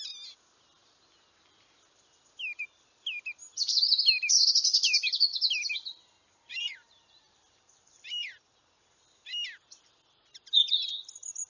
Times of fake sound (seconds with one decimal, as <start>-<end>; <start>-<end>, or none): 3.4-4.2; 6.5-8.6